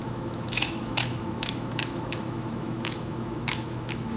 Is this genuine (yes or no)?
no